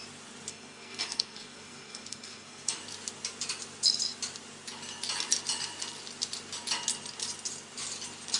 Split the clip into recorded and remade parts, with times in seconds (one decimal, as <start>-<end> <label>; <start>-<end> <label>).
0.0-0.5 recorded; 0.5-2.8 remade; 2.8-8.4 recorded